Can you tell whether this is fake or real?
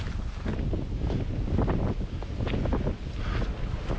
real